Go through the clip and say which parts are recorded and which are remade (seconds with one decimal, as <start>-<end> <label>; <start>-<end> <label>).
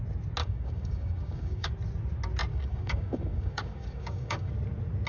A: 0.0-0.4 recorded; 0.4-1.7 remade; 1.7-2.5 recorded; 2.5-4.5 remade; 4.5-5.1 recorded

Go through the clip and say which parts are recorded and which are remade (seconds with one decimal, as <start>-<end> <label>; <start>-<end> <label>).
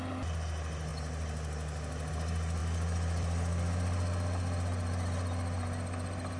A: 0.0-6.4 recorded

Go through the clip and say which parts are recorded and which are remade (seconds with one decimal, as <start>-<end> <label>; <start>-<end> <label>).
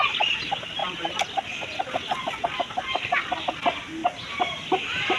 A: 0.0-5.2 recorded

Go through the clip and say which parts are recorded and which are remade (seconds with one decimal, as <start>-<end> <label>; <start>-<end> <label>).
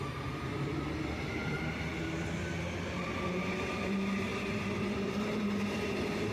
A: 0.0-1.9 remade; 1.9-3.2 recorded; 3.2-6.3 remade